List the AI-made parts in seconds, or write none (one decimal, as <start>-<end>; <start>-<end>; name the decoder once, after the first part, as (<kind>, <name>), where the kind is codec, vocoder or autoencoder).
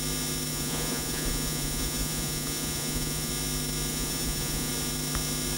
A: 0.5-3.3 (vocoder, Vocos); 3.9-4.7